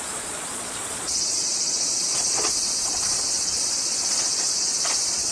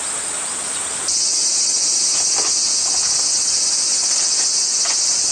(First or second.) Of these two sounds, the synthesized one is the first